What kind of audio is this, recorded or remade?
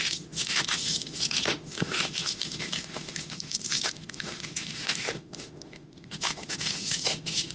remade